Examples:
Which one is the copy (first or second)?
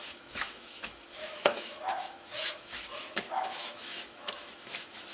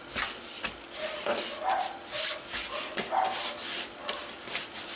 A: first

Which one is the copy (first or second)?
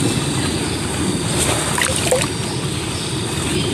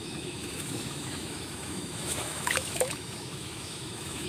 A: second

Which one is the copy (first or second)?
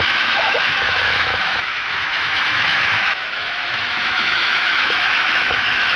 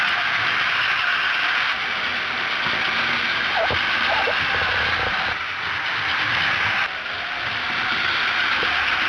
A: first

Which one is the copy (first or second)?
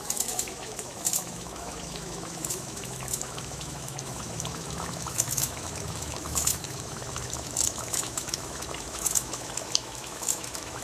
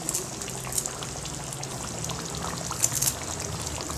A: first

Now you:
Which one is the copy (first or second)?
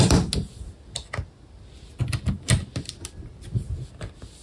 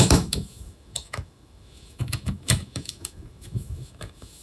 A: second